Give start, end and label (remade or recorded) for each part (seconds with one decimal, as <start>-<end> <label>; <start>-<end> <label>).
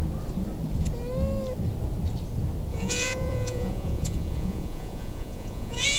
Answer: 0.0-2.7 recorded; 2.7-6.0 remade